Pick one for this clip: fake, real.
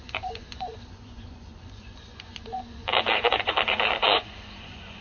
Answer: fake